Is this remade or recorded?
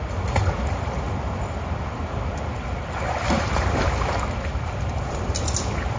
recorded